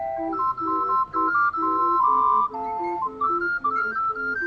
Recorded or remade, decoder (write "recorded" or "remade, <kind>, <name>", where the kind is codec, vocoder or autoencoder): recorded